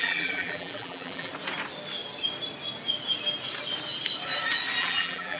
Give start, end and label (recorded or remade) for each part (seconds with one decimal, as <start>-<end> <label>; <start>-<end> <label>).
0.0-1.3 remade; 1.3-4.8 recorded; 4.8-5.4 remade